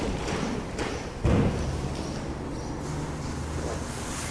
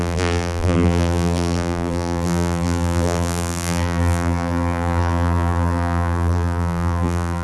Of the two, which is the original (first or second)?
first